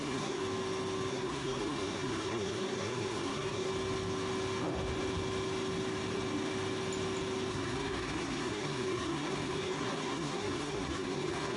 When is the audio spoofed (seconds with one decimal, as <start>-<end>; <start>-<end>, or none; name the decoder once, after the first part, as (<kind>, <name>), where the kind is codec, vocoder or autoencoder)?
0.0-0.4 (codec, SNAC); 1.1-3.7; 7.5-11.6